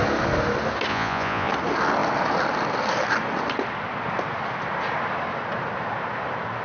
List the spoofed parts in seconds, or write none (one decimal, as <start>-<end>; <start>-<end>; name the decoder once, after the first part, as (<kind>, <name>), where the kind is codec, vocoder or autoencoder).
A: 0.9-1.5 (vocoder, Vocos)